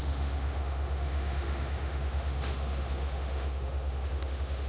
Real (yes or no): no